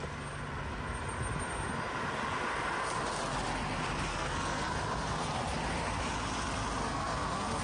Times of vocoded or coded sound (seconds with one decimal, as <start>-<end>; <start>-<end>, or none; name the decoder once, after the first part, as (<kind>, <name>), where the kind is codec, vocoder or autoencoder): 4.1-4.7 (codec, SNAC); 6.9-7.6